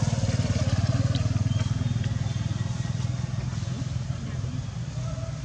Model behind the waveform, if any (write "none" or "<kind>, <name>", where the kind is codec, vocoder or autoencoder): none